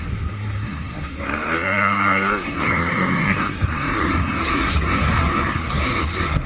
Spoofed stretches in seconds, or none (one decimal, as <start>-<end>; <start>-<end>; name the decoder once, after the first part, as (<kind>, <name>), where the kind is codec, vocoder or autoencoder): 0.0-6.5 (codec, SNAC)